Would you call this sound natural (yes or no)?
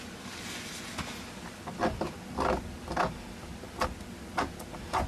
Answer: yes